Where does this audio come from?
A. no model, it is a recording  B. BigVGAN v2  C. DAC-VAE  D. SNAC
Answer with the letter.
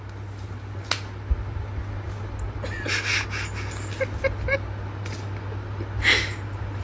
A